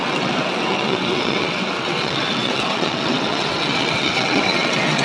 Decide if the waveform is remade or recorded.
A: remade